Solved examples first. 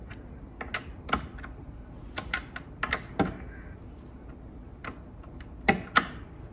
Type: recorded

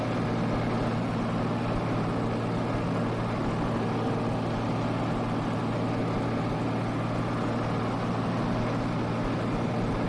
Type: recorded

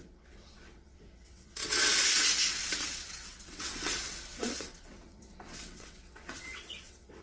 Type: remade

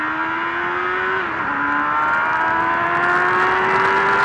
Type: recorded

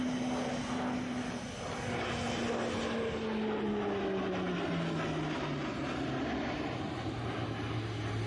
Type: recorded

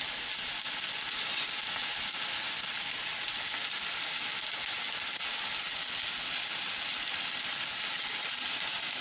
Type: recorded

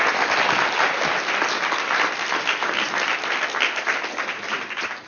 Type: recorded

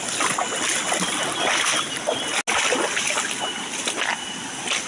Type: recorded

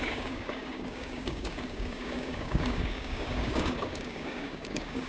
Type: remade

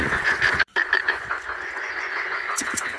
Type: remade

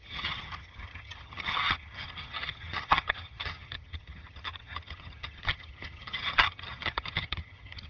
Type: remade